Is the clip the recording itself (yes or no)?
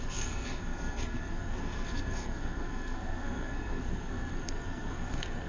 no